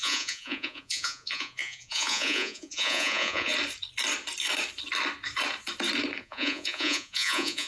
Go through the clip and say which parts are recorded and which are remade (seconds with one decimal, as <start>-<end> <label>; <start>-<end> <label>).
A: 0.0-3.5 remade; 3.5-6.2 recorded; 6.2-7.7 remade